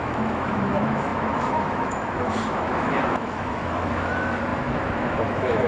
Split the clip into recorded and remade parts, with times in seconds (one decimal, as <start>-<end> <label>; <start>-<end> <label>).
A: 0.0-5.7 remade